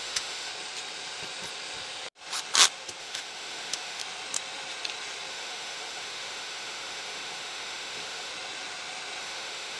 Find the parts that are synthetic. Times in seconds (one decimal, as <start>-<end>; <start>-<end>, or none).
0.0-0.5; 3.0-4.0; 5.3-8.3; 9.2-9.8